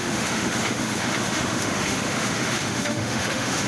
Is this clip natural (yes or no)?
no